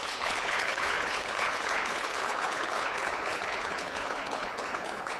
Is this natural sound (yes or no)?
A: no